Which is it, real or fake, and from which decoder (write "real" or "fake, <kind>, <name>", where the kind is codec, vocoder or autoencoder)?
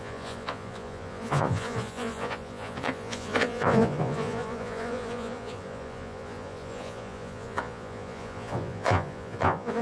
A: fake, vocoder, Vocos